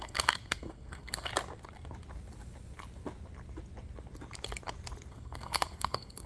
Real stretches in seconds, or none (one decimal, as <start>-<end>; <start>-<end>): 1.3-5.1